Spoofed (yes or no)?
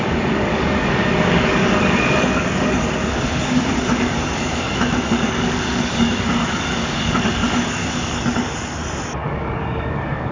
yes